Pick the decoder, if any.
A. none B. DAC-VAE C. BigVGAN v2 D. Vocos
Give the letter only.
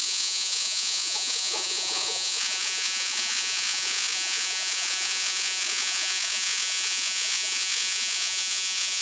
D